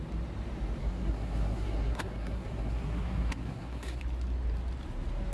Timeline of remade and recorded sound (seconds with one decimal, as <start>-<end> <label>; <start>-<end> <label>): 0.0-0.8 recorded; 0.8-4.0 remade; 4.0-5.3 recorded